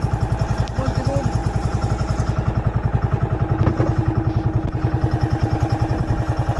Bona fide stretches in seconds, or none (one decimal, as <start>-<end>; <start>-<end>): 0.0-1.4; 1.9-5.4; 5.9-6.6